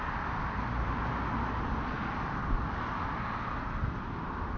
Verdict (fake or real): real